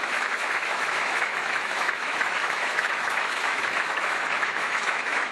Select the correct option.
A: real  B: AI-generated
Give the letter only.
B